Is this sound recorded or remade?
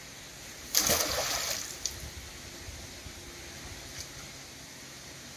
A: recorded